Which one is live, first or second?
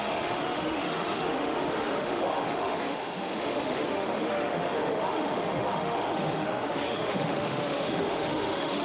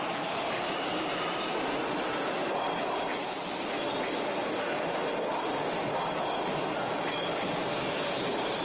second